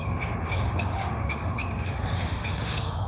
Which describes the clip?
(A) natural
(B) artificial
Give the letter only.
B